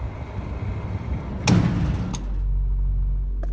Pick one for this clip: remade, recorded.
recorded